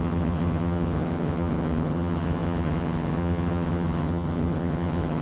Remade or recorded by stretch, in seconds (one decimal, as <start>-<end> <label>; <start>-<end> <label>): 0.0-5.2 remade